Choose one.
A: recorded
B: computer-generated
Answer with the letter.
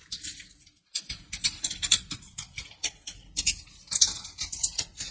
A